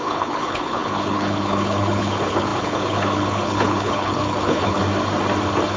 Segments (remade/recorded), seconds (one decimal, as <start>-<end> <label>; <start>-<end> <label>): 0.0-4.8 remade; 4.8-5.8 recorded